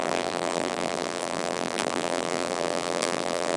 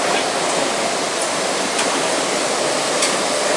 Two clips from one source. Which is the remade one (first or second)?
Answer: first